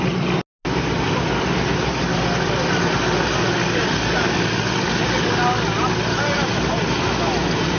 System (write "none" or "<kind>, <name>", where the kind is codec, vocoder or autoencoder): none